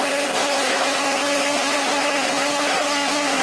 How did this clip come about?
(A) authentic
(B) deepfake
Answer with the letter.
B